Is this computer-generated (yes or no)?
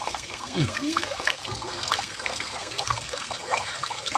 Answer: yes